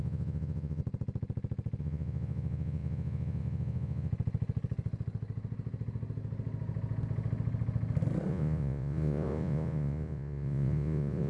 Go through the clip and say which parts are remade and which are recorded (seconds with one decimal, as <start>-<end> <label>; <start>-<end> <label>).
0.0-0.8 remade; 0.8-1.8 recorded; 1.8-4.1 remade; 4.1-8.3 recorded; 8.3-11.3 remade